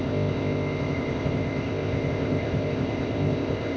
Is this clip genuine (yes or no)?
no